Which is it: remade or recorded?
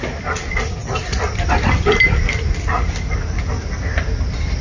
recorded